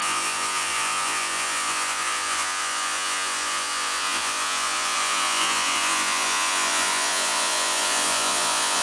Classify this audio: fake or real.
fake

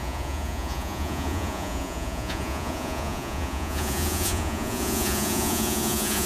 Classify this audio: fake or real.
fake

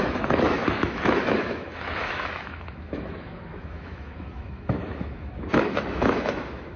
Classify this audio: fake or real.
fake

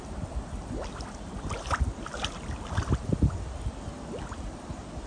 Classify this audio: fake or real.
real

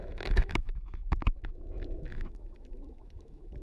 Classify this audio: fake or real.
fake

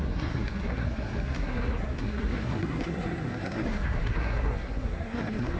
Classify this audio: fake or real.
fake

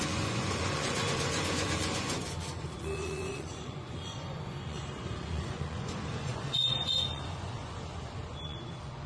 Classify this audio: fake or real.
fake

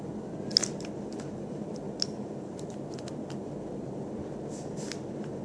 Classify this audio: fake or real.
real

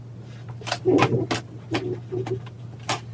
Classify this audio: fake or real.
real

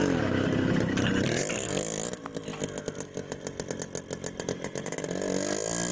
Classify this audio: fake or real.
real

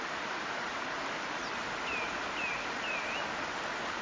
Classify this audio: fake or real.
real